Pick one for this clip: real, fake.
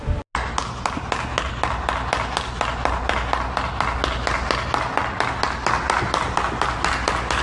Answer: real